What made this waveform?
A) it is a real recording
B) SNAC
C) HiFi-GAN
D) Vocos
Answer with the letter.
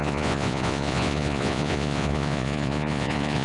D